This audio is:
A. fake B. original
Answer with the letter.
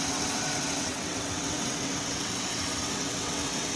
A